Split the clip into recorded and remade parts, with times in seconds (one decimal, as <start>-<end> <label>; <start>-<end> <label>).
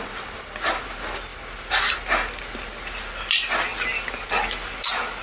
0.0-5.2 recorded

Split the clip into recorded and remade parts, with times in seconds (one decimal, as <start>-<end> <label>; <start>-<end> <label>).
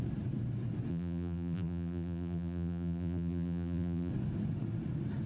0.0-0.9 recorded; 0.9-4.1 remade; 4.1-5.3 recorded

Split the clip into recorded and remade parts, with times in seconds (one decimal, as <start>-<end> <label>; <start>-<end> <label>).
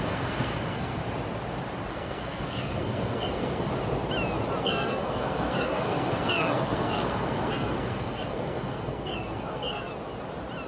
0.0-1.0 remade; 1.0-1.9 recorded; 1.9-3.7 remade; 3.7-4.6 recorded; 4.6-9.9 remade; 9.9-10.7 recorded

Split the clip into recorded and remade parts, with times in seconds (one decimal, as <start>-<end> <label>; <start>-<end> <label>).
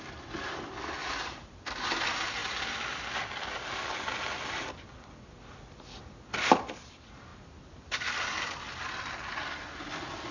0.0-1.0 recorded; 1.0-2.0 remade; 2.0-7.3 recorded; 7.3-7.8 remade; 7.8-10.3 recorded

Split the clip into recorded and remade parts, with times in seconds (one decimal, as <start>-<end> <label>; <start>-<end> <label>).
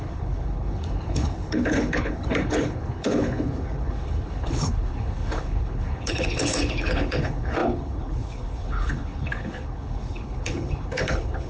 0.0-11.5 remade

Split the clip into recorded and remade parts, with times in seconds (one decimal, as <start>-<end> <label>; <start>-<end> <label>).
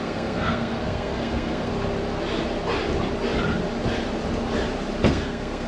0.0-1.7 remade; 1.7-5.1 recorded; 5.1-5.7 remade